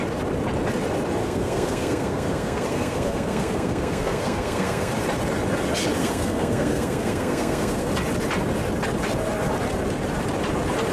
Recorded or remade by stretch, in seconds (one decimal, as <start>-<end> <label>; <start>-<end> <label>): 0.0-1.2 recorded; 1.2-4.9 remade; 4.9-6.0 recorded; 6.0-7.9 remade; 7.9-10.9 recorded